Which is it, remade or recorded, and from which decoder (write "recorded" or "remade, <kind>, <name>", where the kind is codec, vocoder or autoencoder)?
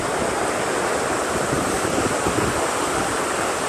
recorded